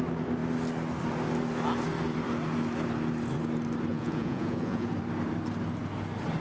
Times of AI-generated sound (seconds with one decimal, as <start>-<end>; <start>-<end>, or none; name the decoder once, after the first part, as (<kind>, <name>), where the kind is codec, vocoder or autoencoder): 3.9-4.9 (vocoder, Vocos)